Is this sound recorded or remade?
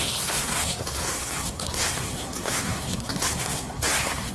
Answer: remade